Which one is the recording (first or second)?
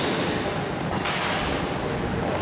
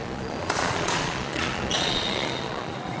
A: first